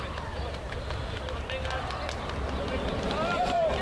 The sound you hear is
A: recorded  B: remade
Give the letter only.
A